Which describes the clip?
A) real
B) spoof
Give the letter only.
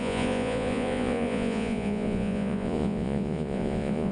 B